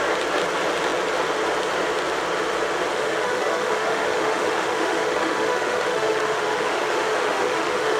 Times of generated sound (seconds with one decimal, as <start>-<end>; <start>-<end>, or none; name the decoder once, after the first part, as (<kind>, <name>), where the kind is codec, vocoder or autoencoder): 2.9-8.0 (autoencoder, DAC-VAE)